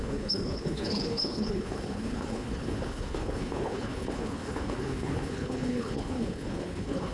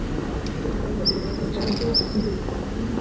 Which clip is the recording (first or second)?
second